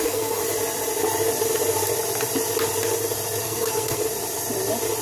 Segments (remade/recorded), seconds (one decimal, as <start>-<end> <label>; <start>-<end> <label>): 0.0-0.4 remade; 0.4-3.4 recorded; 3.4-4.0 remade; 4.0-5.0 recorded